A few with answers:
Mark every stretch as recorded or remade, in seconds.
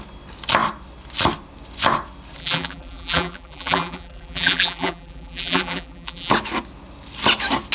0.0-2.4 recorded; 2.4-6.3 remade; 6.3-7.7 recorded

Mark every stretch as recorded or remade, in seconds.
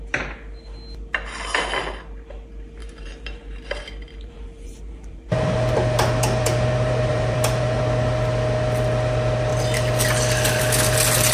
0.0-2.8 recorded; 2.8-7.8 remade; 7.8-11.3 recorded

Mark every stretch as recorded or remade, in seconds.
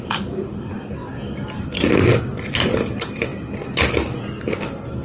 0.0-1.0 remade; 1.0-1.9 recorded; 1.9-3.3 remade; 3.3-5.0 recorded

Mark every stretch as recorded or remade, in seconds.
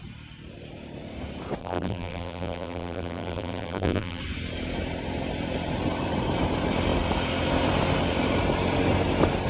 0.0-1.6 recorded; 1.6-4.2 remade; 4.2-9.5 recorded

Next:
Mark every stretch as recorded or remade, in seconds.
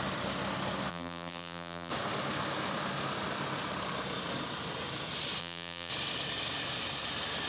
0.0-0.9 recorded; 0.9-1.9 remade; 1.9-5.4 recorded; 5.4-5.9 remade; 5.9-7.5 recorded